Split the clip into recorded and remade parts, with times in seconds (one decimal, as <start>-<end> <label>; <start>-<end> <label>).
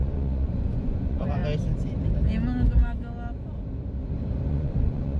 0.0-1.4 remade; 1.4-4.5 recorded; 4.5-5.2 remade